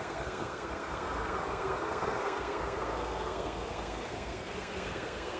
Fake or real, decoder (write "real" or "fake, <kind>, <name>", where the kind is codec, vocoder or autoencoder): fake, codec, SNAC